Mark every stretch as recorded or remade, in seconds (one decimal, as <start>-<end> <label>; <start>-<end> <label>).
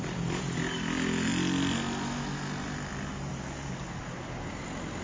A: 0.0-5.0 recorded